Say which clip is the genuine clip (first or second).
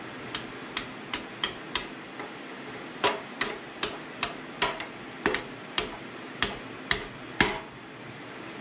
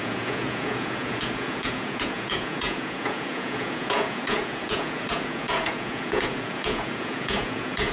first